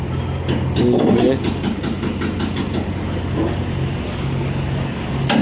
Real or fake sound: real